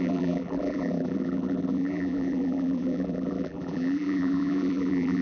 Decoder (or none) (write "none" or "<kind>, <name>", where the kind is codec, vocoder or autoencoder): vocoder, BigVGAN v2